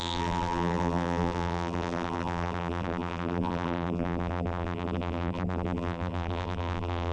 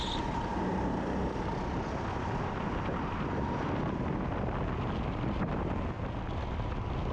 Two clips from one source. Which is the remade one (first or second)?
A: first